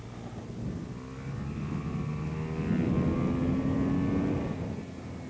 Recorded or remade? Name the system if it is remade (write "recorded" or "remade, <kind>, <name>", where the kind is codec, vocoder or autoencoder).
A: recorded